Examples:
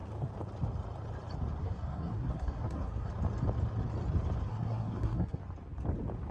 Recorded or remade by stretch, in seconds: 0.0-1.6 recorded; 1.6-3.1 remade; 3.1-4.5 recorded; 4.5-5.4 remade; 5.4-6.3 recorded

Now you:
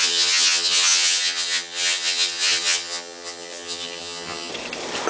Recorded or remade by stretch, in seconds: 0.0-4.5 remade; 4.5-5.1 recorded